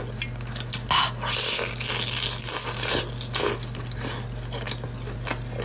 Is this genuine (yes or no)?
yes